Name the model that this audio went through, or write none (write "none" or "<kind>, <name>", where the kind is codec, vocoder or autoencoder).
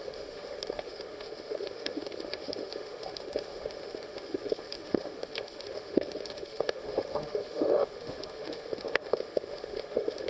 autoencoder, DAC-VAE